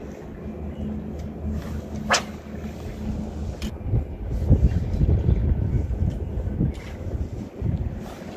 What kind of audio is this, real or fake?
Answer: real